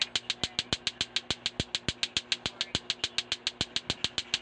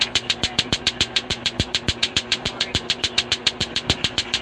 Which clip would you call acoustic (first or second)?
first